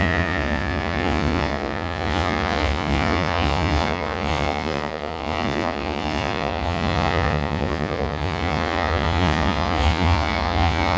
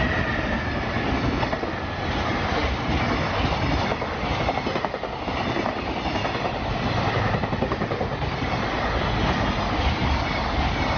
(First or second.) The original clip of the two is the second